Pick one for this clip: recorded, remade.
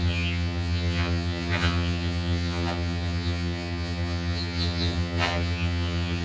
remade